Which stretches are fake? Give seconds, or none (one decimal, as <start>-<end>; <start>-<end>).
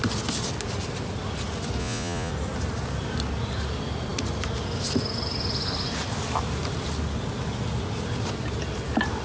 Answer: 1.8-2.3